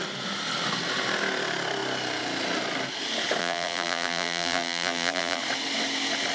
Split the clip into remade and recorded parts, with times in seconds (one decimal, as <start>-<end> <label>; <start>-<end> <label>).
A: 0.0-3.4 recorded; 3.4-5.4 remade; 5.4-6.3 recorded